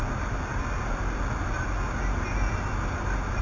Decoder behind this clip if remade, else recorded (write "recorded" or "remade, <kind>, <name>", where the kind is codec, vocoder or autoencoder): recorded